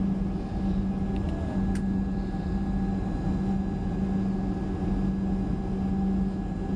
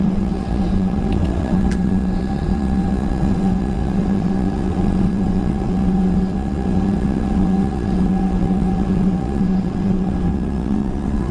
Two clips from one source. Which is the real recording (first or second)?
first